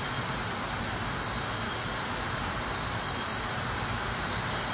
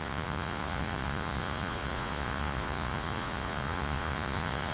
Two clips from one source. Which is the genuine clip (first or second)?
first